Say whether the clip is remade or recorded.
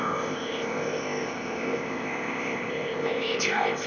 remade